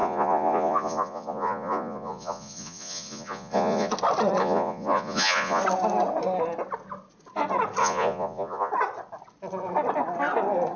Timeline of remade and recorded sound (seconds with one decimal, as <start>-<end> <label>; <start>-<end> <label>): 0.0-3.9 remade; 3.9-4.4 recorded; 4.4-5.6 remade; 5.6-7.8 recorded; 7.8-8.7 remade; 8.7-10.8 recorded